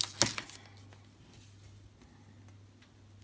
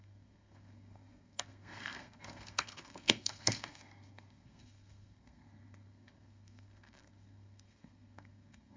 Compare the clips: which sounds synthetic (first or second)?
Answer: second